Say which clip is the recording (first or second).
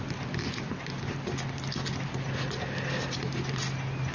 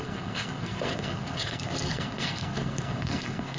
first